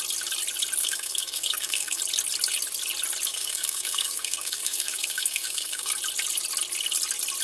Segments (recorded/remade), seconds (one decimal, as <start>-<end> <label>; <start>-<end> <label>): 0.0-0.8 recorded; 0.8-2.0 remade; 2.0-3.3 recorded; 3.3-5.9 remade; 5.9-7.4 recorded